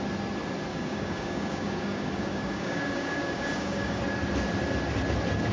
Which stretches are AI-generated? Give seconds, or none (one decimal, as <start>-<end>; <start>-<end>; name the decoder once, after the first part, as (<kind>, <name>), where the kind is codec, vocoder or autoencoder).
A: 0.7-4.0 (codec, DAC)